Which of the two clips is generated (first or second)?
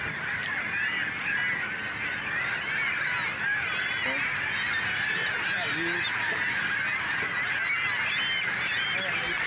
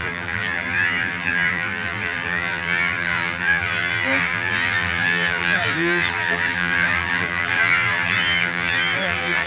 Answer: second